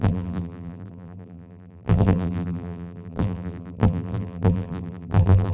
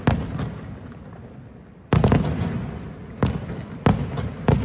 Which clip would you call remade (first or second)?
first